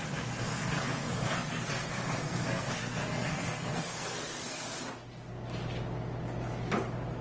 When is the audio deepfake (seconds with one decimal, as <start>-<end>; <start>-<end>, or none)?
0.5-4.8